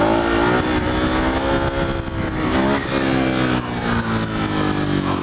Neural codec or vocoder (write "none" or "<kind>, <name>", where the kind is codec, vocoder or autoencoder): none